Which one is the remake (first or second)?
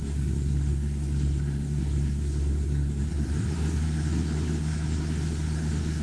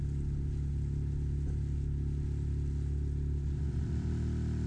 first